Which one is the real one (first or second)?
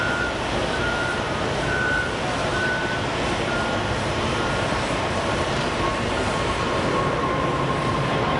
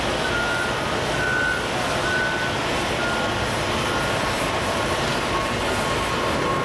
second